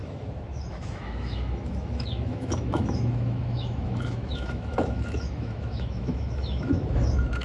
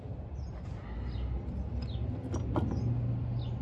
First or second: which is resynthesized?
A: first